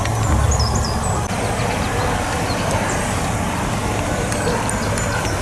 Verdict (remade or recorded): recorded